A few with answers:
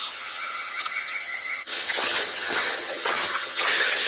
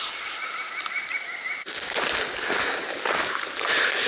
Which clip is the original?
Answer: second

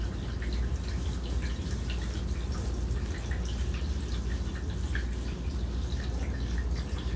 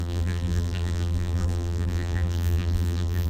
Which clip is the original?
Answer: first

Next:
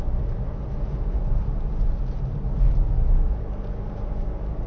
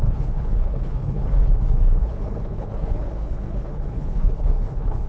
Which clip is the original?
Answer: first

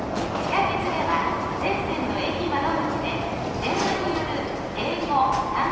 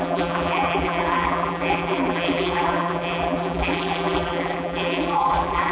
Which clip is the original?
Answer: first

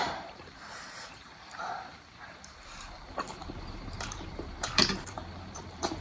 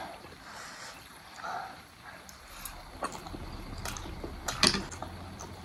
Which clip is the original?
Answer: second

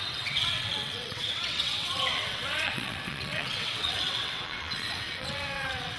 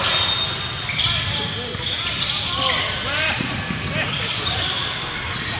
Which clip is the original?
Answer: second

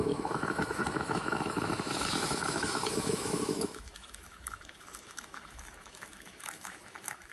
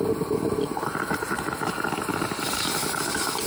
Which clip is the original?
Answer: second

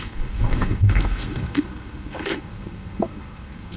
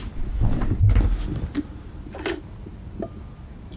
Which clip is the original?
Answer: second